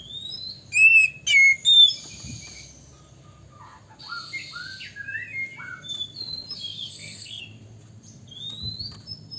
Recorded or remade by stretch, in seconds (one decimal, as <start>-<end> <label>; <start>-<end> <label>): 0.0-6.9 recorded; 6.9-7.4 remade; 7.4-9.4 recorded